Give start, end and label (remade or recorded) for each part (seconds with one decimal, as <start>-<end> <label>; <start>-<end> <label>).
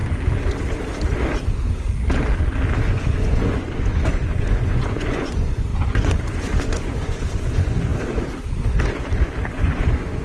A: 0.0-2.8 recorded; 2.8-7.9 remade; 7.9-9.5 recorded; 9.5-10.2 remade